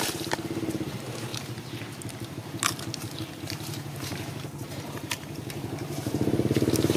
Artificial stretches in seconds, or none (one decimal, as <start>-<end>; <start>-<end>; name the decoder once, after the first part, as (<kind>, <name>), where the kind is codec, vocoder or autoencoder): 0.0-1.3 (vocoder, BigVGAN v2); 3.4-7.0